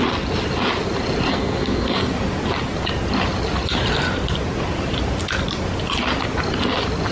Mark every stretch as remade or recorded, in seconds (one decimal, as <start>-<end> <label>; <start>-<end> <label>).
0.0-1.3 recorded; 1.3-2.1 remade; 2.1-7.1 recorded